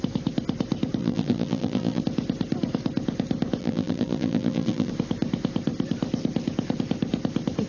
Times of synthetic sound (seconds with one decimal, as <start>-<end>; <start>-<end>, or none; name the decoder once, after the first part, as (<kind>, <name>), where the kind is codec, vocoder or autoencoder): 1.0-2.0 (vocoder, BigVGAN v2); 3.6-4.9